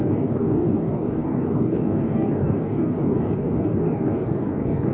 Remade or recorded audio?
remade